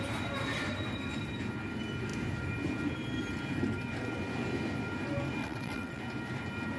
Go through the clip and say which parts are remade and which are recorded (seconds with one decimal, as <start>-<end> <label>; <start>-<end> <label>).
0.0-5.4 recorded; 5.4-6.0 remade; 6.0-6.8 recorded